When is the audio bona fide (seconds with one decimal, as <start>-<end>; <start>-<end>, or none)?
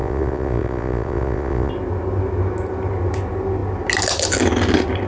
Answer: 1.7-5.1